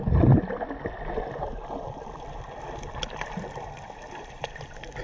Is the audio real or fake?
real